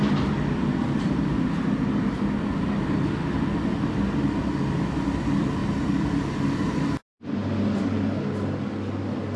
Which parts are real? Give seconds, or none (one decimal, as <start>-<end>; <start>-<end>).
0.0-0.6; 1.7-5.6; 6.4-9.4